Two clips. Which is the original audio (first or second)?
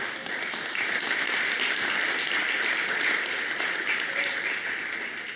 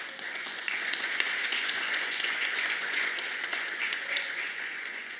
first